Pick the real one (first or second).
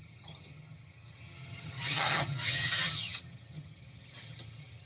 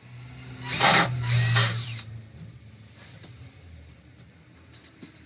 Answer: second